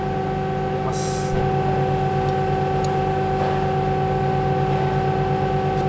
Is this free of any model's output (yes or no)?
yes